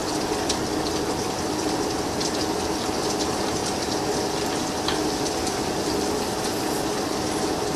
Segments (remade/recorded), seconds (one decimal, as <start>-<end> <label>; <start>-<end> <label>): 0.0-7.8 recorded